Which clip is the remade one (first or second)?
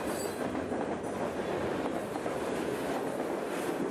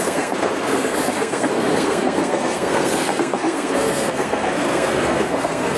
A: second